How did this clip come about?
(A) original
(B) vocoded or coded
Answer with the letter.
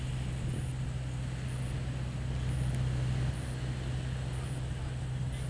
A